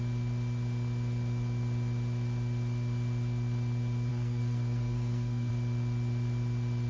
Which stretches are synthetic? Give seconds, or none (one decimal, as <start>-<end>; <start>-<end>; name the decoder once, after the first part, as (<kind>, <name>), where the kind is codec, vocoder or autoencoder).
4.1-5.5 (codec, SNAC)

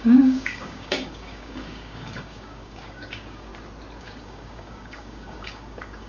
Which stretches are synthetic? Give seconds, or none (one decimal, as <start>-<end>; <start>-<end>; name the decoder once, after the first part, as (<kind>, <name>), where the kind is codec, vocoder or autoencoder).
0.0-3.5 (codec, DAC); 4.0-6.1

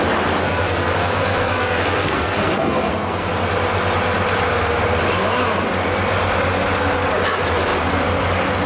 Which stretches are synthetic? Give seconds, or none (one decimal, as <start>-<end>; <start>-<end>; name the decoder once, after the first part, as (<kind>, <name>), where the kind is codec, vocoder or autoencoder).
0.4-3.3 (codec, SNAC)

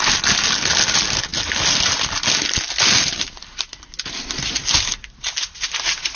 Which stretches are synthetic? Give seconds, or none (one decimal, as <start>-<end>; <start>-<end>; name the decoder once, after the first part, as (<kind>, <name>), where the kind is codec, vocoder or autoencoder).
none

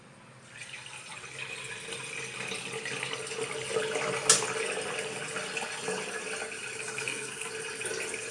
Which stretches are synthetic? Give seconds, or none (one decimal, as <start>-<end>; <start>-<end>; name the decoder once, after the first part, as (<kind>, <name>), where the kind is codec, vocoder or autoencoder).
6.8-7.5 (codec, SNAC)

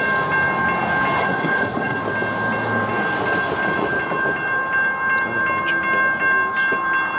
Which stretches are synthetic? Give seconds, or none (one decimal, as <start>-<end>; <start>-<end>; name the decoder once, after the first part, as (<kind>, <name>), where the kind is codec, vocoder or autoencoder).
1.2-2.0 (codec, SNAC)

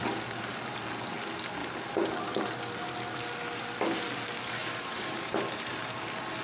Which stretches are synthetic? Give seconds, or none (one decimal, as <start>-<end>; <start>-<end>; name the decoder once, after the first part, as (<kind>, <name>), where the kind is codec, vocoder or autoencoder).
1.6-2.5 (vocoder, BigVGAN v2); 4.6-5.8

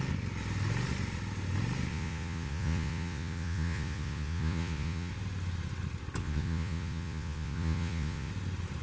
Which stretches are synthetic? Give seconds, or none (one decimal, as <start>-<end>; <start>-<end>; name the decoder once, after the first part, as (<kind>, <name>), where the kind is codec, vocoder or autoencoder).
1.9-5.1 (vocoder, Vocos); 6.2-8.3